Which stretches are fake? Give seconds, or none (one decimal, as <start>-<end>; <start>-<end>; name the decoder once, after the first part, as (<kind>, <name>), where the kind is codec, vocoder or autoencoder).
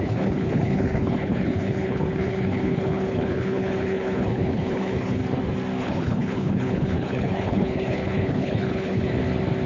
0.0-5.2 (codec, HILCodec); 5.8-9.1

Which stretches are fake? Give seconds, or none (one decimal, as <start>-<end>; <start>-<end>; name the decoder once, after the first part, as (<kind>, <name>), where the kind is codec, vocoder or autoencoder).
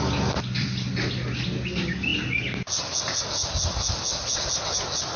none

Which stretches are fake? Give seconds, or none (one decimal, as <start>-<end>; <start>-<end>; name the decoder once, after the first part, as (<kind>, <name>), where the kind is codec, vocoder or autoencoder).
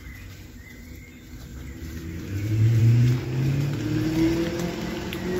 0.0-2.8 (vocoder, BigVGAN v2)